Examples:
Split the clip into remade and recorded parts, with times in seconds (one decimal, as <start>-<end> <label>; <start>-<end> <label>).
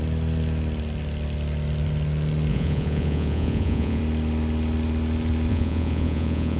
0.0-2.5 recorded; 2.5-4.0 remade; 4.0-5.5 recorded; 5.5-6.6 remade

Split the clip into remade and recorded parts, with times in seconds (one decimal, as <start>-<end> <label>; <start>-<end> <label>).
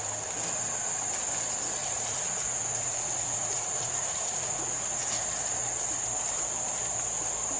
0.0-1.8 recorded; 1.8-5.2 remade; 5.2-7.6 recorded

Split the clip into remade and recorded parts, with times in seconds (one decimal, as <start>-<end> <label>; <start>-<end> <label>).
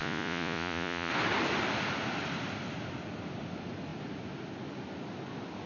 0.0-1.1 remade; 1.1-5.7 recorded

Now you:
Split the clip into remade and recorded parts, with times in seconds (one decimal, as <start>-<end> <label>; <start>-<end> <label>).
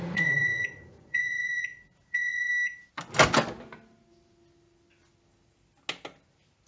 0.0-2.5 remade; 2.5-6.7 recorded